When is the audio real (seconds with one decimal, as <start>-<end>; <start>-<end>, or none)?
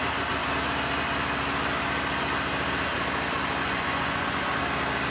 0.0-3.6; 4.6-5.1